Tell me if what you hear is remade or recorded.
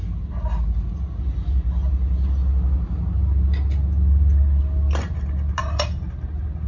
recorded